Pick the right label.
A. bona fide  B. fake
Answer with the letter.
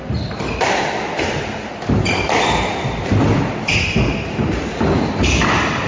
A